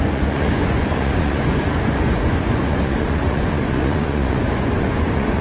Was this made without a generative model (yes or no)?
no